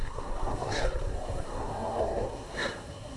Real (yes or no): no